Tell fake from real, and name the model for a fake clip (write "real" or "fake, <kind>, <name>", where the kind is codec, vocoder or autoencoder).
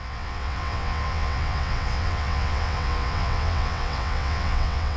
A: fake, vocoder, WaveNeXt